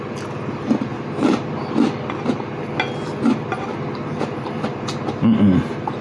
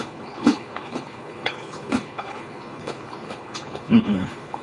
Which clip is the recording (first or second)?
first